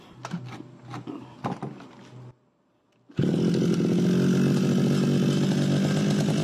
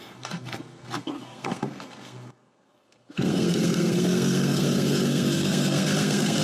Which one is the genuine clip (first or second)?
first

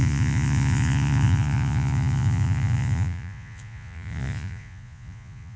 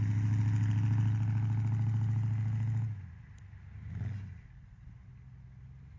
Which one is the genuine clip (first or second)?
second